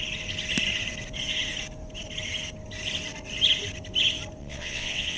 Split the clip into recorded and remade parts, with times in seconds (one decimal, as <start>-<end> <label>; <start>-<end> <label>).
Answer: 0.0-4.4 recorded; 4.4-5.2 remade